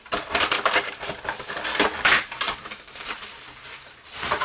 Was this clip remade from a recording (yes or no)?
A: no